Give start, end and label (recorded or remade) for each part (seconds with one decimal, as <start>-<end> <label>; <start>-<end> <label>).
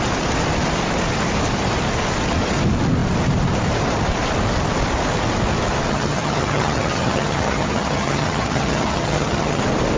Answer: 0.0-5.9 recorded; 5.9-9.6 remade; 9.6-10.0 recorded